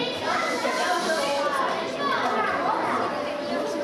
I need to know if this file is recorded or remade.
recorded